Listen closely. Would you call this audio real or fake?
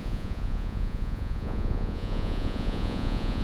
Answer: fake